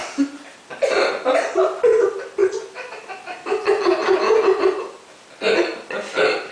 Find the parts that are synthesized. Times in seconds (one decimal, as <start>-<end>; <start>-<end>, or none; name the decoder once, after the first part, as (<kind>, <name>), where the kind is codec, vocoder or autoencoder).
0.0-0.7 (vocoder, BigVGAN v2)